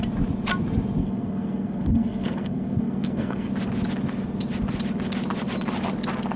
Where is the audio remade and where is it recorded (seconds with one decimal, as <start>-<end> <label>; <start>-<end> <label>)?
0.0-1.0 recorded; 1.0-3.5 remade; 3.5-6.4 recorded